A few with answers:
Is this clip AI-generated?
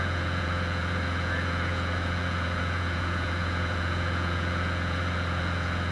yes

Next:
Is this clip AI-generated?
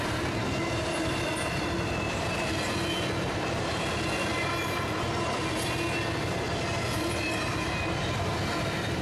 no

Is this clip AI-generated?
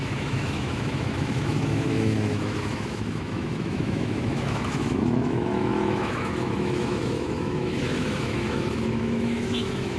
yes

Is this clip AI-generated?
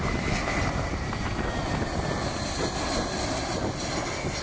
no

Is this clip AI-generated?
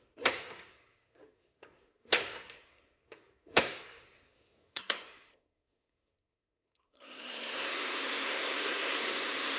yes